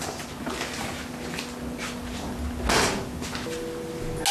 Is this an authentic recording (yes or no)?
yes